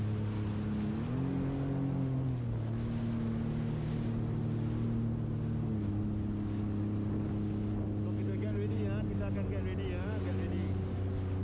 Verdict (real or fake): real